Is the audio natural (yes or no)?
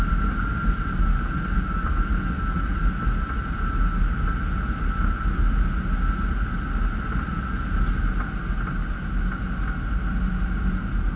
yes